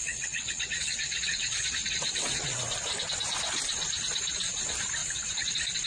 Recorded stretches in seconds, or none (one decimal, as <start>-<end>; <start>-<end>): 2.6-5.0; 5.5-5.9